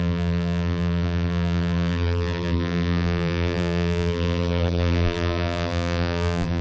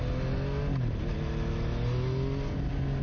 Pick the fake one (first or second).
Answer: first